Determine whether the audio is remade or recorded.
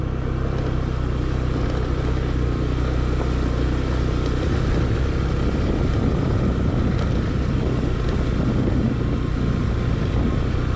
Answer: recorded